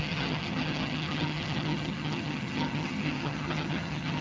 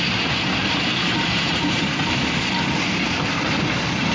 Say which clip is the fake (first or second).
first